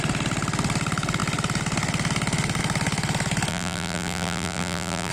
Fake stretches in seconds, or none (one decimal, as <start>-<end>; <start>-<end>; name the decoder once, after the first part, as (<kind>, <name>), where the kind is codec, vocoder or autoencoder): 3.5-5.1 (vocoder, BigVGAN v2)

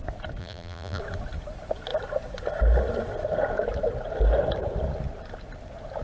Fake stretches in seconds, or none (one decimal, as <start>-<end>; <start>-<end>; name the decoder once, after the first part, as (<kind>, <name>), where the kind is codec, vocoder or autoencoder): 0.4-1.0 (vocoder, BigVGAN v2)

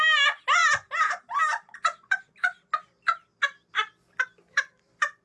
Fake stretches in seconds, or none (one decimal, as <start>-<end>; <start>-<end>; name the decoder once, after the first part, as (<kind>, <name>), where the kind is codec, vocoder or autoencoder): none

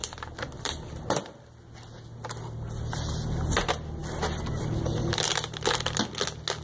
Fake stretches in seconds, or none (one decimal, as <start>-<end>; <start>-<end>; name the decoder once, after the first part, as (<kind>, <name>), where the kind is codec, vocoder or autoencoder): 0.0-3.1 (vocoder, BigVGAN v2); 4.0-5.2

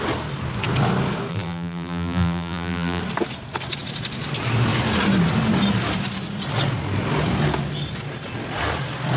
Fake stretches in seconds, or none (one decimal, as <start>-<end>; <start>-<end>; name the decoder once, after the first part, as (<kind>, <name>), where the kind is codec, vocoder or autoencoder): 1.3-3.0 (vocoder, BigVGAN v2)

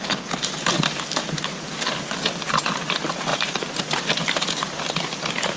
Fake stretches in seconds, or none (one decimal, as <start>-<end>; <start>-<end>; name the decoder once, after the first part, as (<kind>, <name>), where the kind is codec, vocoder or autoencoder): 3.3-4.0 (vocoder, BigVGAN v2)

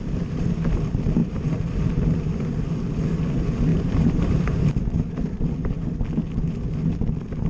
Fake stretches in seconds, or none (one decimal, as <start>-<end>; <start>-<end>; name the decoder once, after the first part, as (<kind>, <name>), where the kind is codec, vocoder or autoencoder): 1.2-1.9 (vocoder, BigVGAN v2); 3.7-4.7

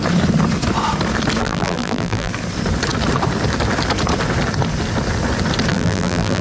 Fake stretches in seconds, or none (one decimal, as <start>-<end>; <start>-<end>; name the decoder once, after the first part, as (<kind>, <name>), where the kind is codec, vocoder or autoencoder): 1.4-2.3 (vocoder, BigVGAN v2); 5.7-6.4